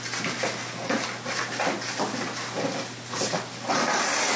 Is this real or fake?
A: real